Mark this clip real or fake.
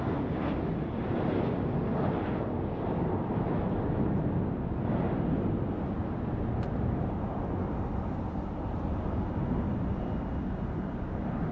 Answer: real